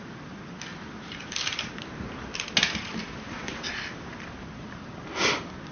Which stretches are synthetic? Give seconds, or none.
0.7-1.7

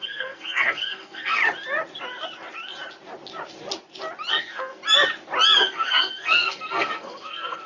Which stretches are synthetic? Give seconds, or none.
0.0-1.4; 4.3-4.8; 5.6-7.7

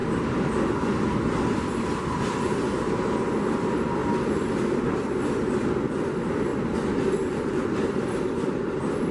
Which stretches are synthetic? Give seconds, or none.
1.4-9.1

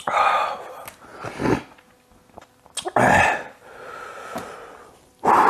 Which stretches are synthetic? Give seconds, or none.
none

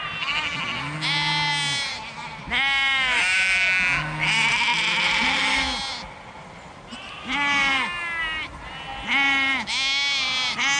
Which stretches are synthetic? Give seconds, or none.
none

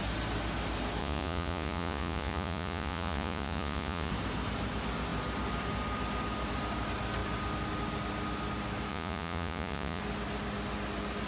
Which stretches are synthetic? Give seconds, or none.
1.0-4.1; 8.9-10.0

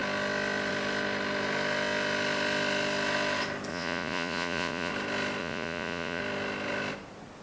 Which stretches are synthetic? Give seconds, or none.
3.7-4.9; 5.4-6.2

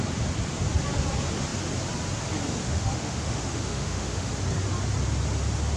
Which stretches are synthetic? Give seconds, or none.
2.6-4.3